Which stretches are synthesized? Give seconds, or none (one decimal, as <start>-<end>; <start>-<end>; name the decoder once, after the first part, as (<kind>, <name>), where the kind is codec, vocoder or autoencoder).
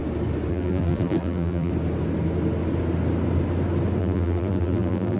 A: 0.5-1.7 (vocoder, BigVGAN v2); 4.0-5.2